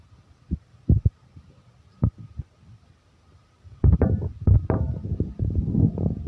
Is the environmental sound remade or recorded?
recorded